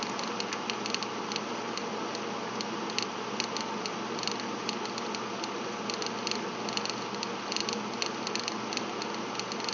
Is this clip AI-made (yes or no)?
no